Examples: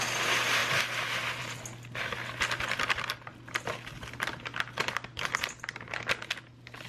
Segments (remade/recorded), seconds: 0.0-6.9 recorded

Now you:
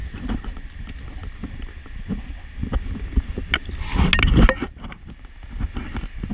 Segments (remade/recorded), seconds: 0.0-1.4 remade; 1.4-6.3 recorded